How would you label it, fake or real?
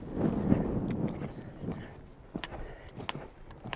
real